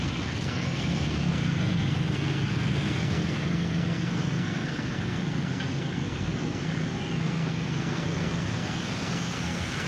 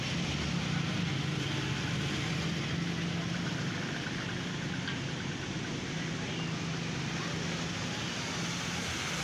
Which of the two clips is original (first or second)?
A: second